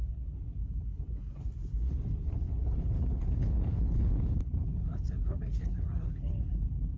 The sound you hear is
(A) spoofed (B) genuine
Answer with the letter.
A